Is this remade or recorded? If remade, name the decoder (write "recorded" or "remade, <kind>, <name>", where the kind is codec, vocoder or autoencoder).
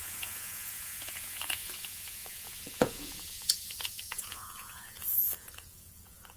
remade, vocoder, Vocos